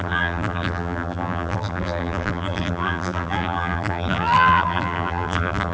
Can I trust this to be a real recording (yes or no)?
no